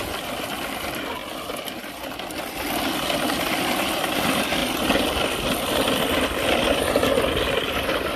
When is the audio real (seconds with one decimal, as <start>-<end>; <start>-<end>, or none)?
0.0-8.2